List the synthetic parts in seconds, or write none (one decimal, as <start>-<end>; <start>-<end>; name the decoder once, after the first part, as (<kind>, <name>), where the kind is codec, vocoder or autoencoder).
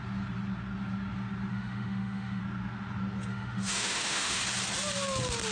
1.5-2.4 (autoencoder, DAC-VAE); 3.3-4.4